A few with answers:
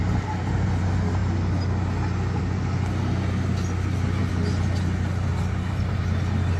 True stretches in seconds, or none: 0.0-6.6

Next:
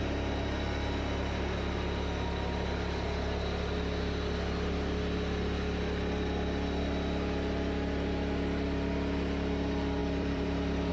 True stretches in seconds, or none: 0.0-10.0

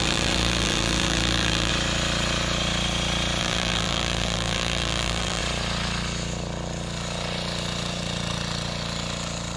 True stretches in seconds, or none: 1.7-3.4; 5.4-9.6

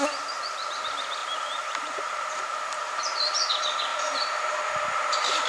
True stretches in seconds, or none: 0.0-1.2; 3.3-3.9; 4.4-5.5

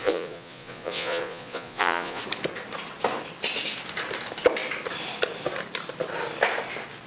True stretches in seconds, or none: 2.2-7.1

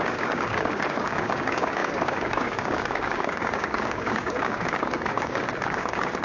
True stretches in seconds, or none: none